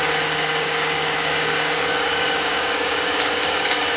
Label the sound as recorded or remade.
remade